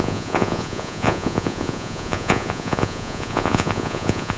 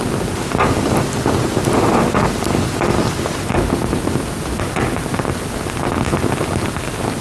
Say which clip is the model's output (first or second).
first